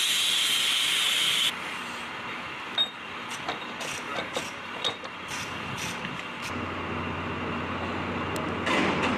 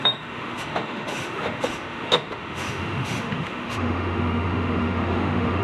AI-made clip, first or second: second